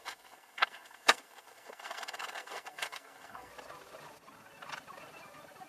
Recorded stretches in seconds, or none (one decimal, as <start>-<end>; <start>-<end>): 3.5-5.7